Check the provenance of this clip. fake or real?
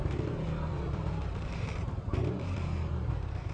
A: fake